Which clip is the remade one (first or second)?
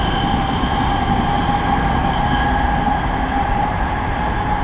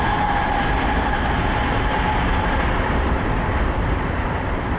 second